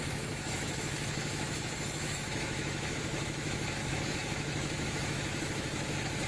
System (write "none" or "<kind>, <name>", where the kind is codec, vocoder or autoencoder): autoencoder, DAC-VAE